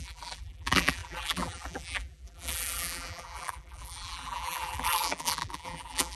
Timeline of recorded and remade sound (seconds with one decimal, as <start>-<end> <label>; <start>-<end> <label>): 0.0-6.2 remade

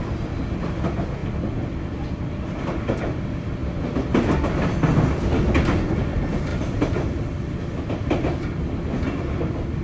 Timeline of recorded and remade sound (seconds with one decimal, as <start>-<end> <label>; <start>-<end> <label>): 0.0-9.8 recorded

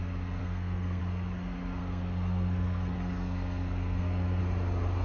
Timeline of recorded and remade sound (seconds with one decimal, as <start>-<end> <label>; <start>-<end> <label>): 0.0-0.4 recorded; 0.4-1.0 remade; 1.0-1.8 recorded; 1.8-4.4 remade; 4.4-5.0 recorded

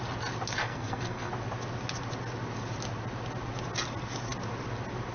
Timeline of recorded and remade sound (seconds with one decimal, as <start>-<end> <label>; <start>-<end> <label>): 0.0-0.6 recorded; 0.6-1.3 remade; 1.3-5.1 recorded

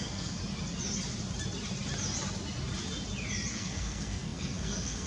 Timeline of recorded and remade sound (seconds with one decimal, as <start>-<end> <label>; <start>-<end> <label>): 0.0-0.4 remade; 0.4-3.5 recorded; 3.5-5.1 remade

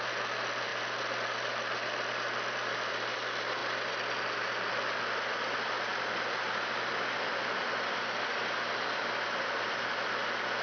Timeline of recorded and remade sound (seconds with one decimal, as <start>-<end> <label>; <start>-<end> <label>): 0.0-10.6 recorded

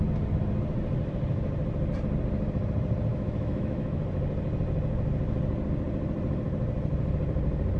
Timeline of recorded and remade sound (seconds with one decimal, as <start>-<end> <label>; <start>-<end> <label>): 0.0-3.1 recorded; 3.1-4.0 remade; 4.0-7.8 recorded

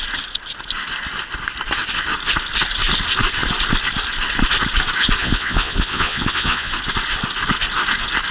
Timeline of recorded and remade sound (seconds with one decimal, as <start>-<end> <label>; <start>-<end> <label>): 0.0-5.2 recorded; 5.2-6.7 remade; 6.7-8.3 recorded